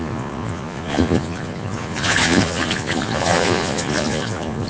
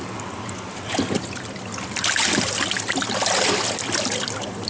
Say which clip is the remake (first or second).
first